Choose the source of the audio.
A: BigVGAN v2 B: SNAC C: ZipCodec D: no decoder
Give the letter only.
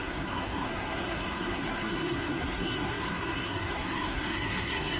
B